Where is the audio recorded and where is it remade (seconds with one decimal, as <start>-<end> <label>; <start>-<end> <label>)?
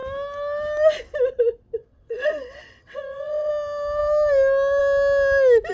0.0-1.8 recorded; 1.8-3.5 remade; 3.5-5.7 recorded